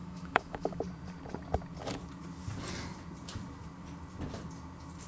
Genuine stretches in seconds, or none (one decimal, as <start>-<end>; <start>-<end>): 0.8-5.1